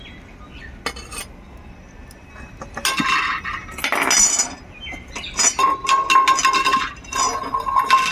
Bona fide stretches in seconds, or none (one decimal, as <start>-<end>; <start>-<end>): 0.0-8.1